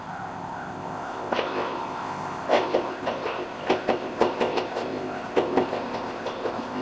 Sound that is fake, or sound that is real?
fake